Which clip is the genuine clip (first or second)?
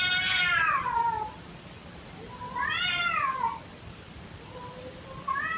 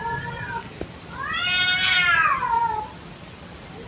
second